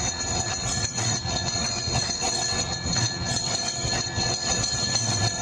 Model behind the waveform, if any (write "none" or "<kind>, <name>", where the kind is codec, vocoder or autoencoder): vocoder, WaveNeXt